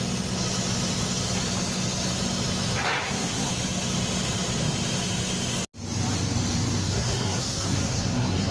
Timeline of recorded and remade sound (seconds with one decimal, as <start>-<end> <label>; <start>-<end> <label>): 0.0-3.0 recorded; 3.0-3.5 remade; 3.5-6.8 recorded; 6.8-8.5 remade